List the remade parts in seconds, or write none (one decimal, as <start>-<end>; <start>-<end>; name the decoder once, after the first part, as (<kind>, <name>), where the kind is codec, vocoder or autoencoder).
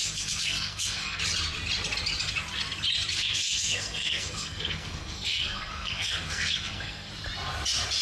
0.0-1.2 (codec, SNAC); 3.1-7.1